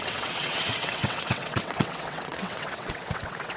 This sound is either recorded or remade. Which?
remade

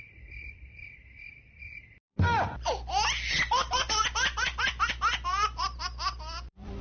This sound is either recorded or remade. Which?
remade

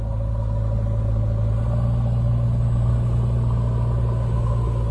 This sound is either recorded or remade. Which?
recorded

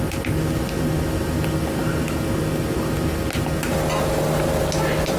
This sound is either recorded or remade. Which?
recorded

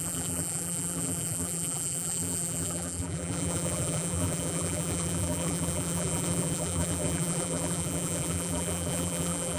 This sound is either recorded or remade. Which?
remade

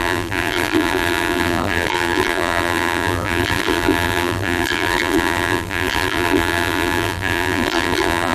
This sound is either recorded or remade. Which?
remade